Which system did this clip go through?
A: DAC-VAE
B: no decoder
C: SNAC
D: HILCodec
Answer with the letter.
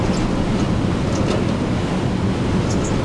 B